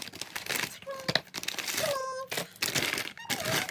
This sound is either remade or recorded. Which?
recorded